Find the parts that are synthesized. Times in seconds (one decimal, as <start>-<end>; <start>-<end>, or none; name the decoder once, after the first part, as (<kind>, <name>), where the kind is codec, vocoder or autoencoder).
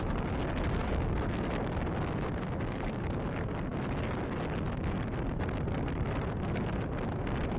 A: 0.8-3.0 (codec, DAC)